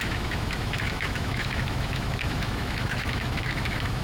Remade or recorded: remade